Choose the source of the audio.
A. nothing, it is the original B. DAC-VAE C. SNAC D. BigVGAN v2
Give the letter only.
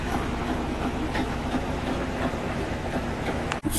B